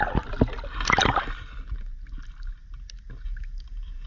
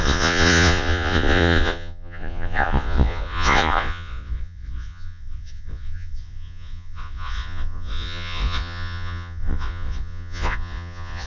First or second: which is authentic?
first